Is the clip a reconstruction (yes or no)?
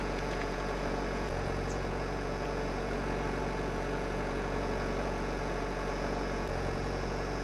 yes